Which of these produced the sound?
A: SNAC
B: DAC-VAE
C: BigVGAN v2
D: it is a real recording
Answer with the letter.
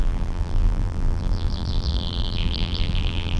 C